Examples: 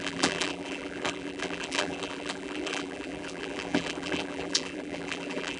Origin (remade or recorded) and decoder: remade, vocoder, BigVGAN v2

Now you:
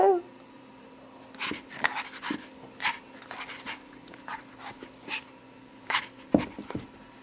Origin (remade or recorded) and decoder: recorded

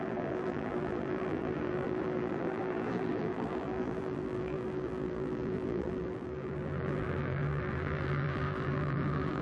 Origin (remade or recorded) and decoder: remade, vocoder, BigVGAN v2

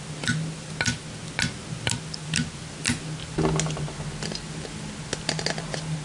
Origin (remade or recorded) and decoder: recorded